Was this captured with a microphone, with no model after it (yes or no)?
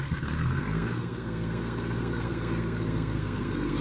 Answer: no